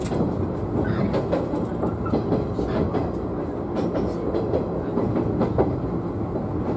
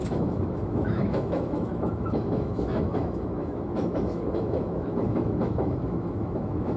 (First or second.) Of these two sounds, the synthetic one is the second